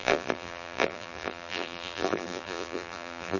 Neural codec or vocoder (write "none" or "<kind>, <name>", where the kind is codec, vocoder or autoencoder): vocoder, BigVGAN v2